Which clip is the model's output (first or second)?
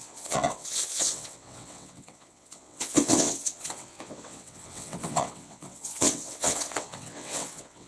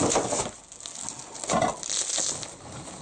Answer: first